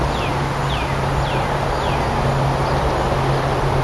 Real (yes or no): yes